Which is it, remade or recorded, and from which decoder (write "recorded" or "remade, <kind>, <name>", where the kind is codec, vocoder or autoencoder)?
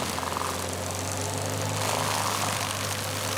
recorded